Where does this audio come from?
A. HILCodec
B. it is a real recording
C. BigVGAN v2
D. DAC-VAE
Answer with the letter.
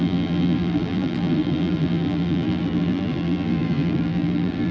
C